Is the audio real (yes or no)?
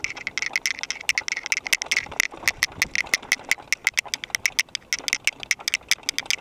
yes